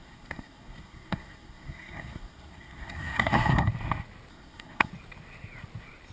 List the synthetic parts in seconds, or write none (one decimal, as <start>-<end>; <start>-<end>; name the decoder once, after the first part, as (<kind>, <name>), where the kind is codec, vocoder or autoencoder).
0.0-3.7 (codec, SNAC); 4.3-4.9